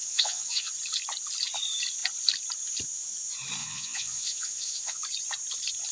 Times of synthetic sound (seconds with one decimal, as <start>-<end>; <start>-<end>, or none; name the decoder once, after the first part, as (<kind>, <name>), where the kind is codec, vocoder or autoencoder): 0.0-0.7 (vocoder, WaveNeXt); 3.6-5.0